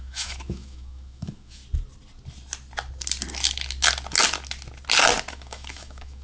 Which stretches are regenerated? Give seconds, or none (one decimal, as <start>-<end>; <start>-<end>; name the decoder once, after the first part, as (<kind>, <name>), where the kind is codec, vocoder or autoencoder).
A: 0.0-1.6 (autoencoder, DAC-VAE); 5.3-6.2